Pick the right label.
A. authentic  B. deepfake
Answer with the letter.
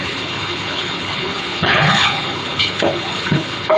B